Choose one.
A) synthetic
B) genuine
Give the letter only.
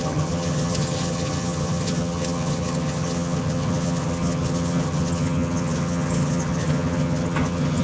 A